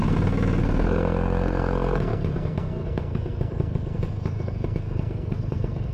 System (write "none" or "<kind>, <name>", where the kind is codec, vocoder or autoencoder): codec, SNAC